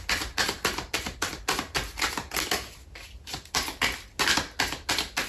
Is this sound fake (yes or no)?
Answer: no